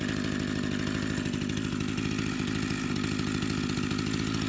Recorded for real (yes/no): yes